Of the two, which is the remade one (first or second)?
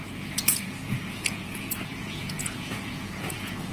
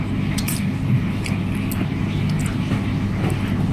first